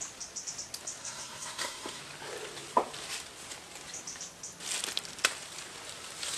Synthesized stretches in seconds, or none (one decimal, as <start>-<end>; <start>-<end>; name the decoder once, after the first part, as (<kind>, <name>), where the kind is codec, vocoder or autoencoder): 1.0-2.0 (codec, SNAC)